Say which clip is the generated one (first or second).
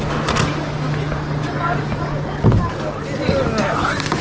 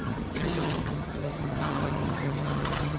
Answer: second